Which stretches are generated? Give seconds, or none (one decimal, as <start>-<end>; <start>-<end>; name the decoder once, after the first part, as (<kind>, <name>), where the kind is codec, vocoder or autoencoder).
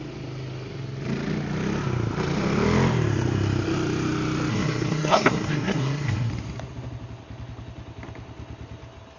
4.5-6.3 (codec, SNAC)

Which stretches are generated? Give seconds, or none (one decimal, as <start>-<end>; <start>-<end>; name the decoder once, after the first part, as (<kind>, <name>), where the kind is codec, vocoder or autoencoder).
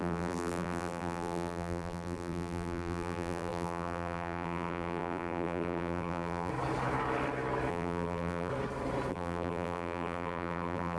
0.0-6.5 (vocoder, BigVGAN v2); 7.7-8.5; 9.1-11.0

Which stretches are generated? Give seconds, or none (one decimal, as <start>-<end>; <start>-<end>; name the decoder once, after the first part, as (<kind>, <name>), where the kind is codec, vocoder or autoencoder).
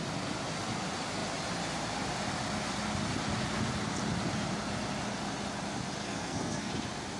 6.0-6.7 (codec, SNAC)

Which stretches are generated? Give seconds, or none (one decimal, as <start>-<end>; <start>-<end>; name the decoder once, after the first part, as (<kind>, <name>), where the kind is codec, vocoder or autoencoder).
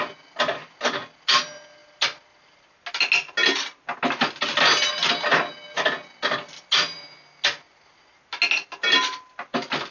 none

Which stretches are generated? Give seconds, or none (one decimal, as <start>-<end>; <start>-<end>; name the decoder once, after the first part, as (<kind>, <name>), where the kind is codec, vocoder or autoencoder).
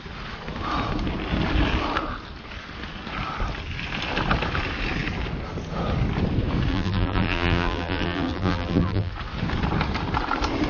6.7-9.1 (vocoder, BigVGAN v2)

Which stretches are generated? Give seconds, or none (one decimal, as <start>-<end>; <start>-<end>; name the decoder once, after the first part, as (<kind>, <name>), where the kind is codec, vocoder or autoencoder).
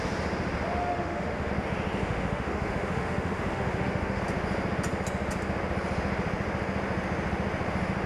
0.8-1.5 (autoencoder, DAC-VAE); 2.0-4.2